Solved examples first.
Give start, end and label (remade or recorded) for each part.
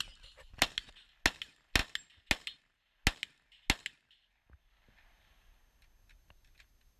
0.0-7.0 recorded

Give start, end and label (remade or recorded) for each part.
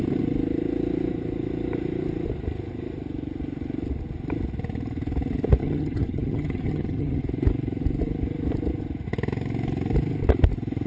0.0-5.6 recorded; 5.6-7.2 remade; 7.2-10.9 recorded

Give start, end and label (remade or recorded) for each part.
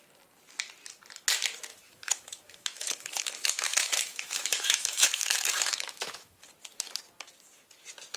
0.0-1.7 recorded; 1.7-6.4 remade; 6.4-8.2 recorded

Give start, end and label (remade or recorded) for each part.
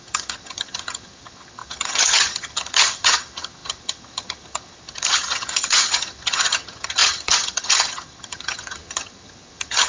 0.0-9.9 remade